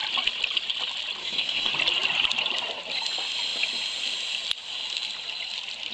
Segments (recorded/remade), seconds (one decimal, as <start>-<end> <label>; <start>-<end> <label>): 0.0-1.2 recorded; 1.2-1.7 remade; 1.7-5.9 recorded